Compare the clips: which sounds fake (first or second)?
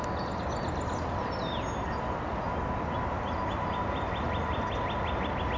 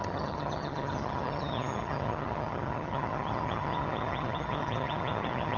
second